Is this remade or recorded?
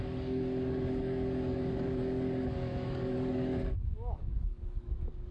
remade